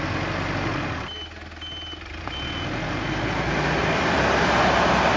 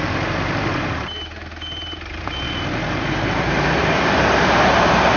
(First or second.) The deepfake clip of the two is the second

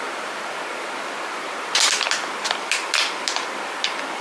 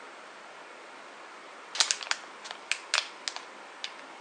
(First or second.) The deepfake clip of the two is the first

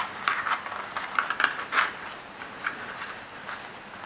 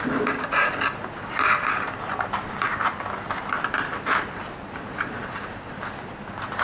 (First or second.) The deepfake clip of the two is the second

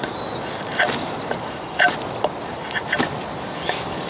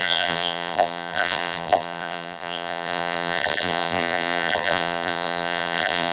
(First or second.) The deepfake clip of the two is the second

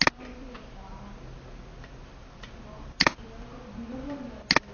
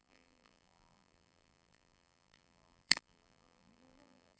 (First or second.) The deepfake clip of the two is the second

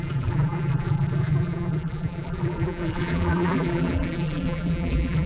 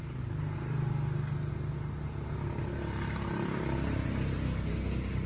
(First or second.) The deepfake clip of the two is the first